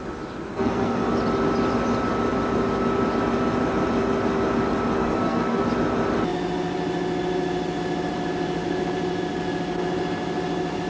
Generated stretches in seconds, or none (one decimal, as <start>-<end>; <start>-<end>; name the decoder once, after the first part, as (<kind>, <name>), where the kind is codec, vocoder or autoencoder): 0.5-1.1 (codec, SNAC); 5.0-5.6